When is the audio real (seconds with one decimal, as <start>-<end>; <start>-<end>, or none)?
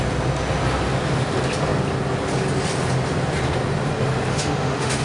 0.0-4.3